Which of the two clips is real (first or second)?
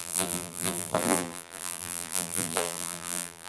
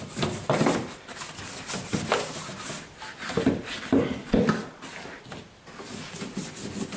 second